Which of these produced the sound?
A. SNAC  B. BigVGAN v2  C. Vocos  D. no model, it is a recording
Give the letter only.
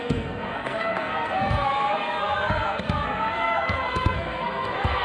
A